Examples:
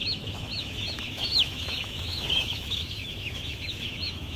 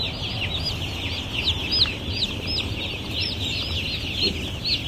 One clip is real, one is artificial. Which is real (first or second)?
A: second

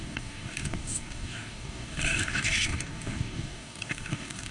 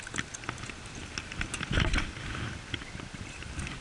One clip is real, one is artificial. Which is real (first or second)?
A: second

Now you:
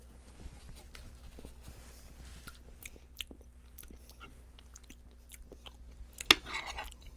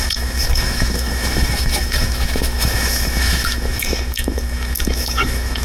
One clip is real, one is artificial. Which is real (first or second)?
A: first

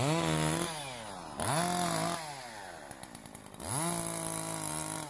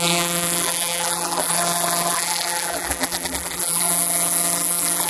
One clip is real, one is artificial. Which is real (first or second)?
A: first